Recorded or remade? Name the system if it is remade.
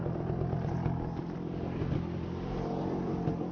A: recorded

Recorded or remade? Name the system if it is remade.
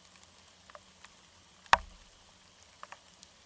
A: recorded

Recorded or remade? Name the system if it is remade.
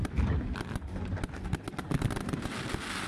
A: recorded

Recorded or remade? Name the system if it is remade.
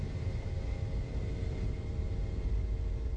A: remade, vocoder, BigVGAN v2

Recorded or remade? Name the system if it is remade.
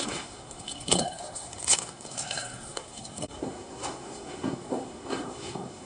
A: remade, codec, SNAC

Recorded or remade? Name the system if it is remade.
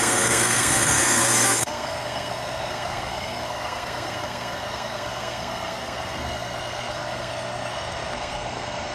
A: remade, codec, SNAC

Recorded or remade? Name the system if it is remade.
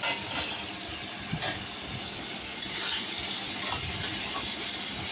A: recorded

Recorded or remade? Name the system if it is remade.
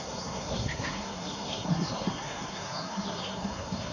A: remade, codec, SNAC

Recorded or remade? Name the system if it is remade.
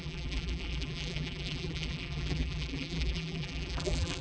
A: remade, vocoder, BigVGAN v2